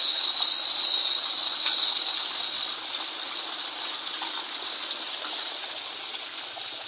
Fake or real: real